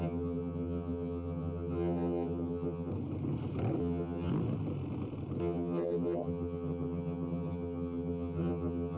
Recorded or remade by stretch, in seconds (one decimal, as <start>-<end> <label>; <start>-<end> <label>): 0.0-2.9 remade; 2.9-3.8 recorded; 3.8-4.3 remade; 4.3-5.4 recorded; 5.4-9.0 remade